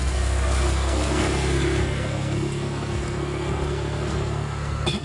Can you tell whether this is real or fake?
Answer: fake